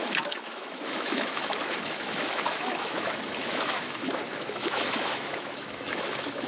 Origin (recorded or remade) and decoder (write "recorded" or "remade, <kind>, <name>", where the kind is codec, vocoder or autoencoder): remade, autoencoder, DAC-VAE